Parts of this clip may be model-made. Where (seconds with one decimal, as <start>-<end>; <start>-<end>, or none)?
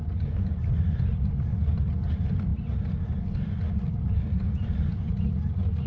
none